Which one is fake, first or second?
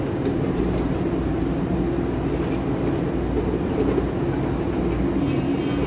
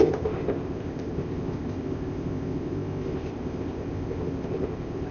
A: second